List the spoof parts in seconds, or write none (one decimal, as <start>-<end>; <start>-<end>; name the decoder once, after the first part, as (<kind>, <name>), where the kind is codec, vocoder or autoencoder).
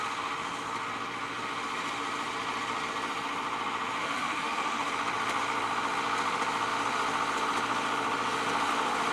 4.0-4.9 (autoencoder, DAC-VAE)